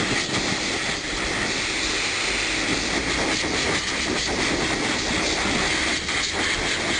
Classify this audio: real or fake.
real